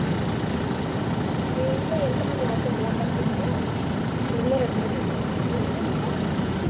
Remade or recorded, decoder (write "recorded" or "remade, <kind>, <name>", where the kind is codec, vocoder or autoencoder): recorded